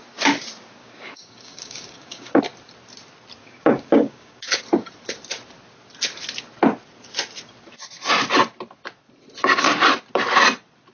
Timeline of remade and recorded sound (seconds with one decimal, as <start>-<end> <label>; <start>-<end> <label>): 0.0-0.8 recorded; 0.8-2.4 remade; 2.4-3.4 recorded; 3.4-4.6 remade; 4.6-10.9 recorded